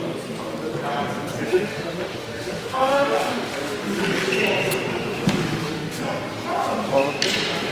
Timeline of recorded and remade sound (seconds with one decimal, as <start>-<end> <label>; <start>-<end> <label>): 0.0-1.5 recorded; 1.5-4.0 remade; 4.0-4.9 recorded; 4.9-6.0 remade; 6.0-7.7 recorded